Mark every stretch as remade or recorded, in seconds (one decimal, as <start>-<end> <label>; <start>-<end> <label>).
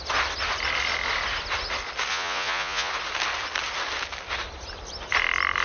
0.0-2.1 recorded; 2.1-2.9 remade; 2.9-5.6 recorded